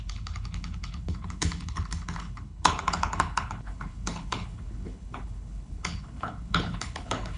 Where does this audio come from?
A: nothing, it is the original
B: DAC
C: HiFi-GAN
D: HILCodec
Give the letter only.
D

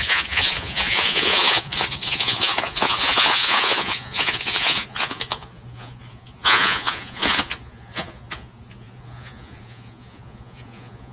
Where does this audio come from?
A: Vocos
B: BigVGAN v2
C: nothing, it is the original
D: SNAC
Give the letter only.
A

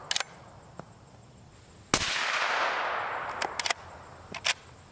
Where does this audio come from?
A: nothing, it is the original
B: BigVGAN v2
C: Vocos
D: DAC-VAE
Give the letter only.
A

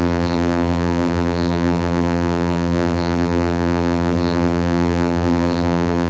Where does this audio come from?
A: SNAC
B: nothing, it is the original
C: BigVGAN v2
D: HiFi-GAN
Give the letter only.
C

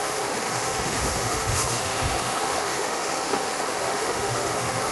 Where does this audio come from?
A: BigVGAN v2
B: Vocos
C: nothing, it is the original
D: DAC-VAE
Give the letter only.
D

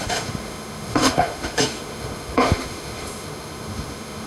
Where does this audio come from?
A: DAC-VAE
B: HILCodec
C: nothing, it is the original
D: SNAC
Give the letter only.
A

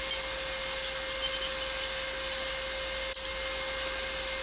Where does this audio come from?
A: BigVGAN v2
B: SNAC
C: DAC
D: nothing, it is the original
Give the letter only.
D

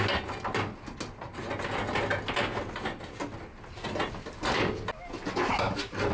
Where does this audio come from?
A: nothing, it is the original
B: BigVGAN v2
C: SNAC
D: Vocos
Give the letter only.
A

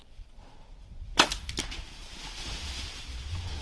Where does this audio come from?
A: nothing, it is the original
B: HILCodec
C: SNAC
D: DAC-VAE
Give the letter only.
A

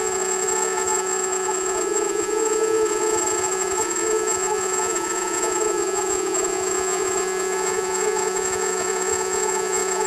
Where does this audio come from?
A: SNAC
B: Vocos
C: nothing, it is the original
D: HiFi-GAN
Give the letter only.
B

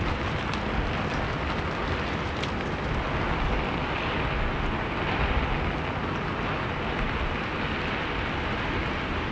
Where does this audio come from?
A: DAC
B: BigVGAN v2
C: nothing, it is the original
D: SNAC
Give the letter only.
C